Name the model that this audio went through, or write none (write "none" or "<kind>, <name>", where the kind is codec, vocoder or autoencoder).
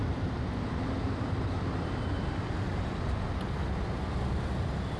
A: none